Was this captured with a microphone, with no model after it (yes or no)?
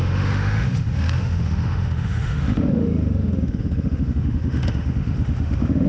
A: no